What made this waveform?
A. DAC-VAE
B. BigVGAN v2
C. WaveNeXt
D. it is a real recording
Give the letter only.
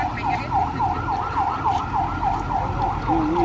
D